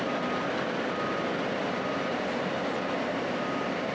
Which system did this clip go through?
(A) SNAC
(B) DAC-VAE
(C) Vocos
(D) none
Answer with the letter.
D